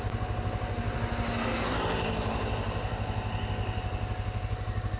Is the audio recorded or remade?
recorded